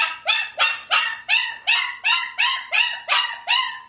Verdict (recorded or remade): remade